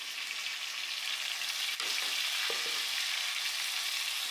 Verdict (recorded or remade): recorded